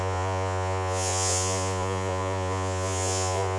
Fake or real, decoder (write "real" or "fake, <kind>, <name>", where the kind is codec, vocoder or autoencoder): fake, vocoder, Vocos